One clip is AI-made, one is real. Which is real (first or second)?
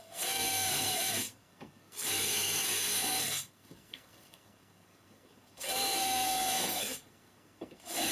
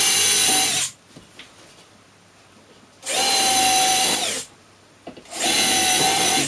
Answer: second